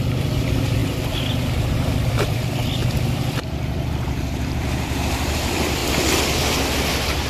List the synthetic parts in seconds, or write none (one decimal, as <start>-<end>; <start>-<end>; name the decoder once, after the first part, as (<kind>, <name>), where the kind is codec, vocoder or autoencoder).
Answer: 0.0-0.8 (vocoder, BigVGAN v2); 1.4-2.8; 3.9-5.8